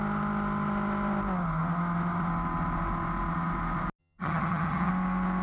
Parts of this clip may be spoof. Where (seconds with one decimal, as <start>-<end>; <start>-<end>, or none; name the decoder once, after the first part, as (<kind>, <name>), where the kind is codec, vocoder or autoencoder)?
4.0-4.9 (vocoder, HiFi-GAN)